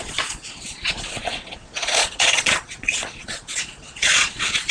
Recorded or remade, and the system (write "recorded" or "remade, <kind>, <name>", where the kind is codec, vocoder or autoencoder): remade, vocoder, Vocos